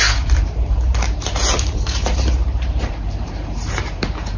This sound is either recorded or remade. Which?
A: remade